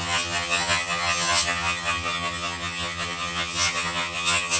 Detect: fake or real fake